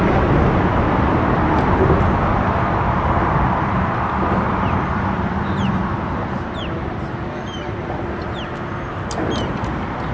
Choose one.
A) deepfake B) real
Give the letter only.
B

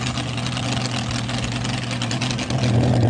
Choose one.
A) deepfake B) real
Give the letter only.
B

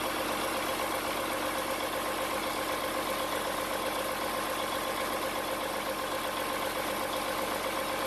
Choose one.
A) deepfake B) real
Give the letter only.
B